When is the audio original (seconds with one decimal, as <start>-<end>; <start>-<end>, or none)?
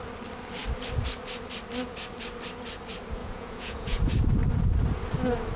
0.0-3.2; 4.0-5.6